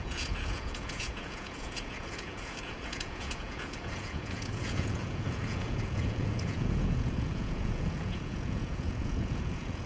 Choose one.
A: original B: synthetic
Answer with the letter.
B